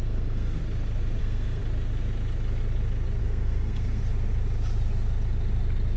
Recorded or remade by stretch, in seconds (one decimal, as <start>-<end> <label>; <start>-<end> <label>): 0.0-0.6 remade; 0.6-1.2 recorded; 1.2-1.6 remade; 1.6-3.2 recorded; 3.2-4.0 remade; 4.0-6.0 recorded